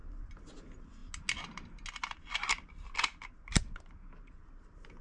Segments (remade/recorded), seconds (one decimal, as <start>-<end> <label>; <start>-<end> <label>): 0.0-5.0 recorded